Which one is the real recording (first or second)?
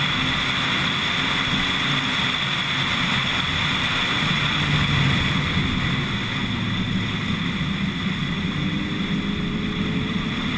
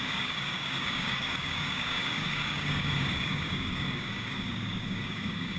first